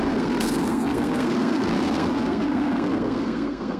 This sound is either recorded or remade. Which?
remade